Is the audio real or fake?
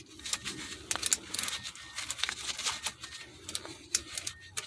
real